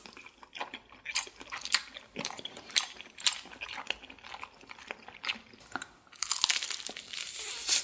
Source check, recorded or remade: recorded